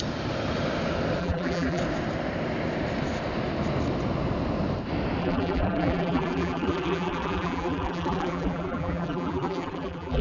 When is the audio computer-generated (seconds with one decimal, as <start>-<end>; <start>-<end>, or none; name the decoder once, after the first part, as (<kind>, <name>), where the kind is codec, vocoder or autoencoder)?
1.2-1.8 (vocoder, BigVGAN v2); 5.2-10.2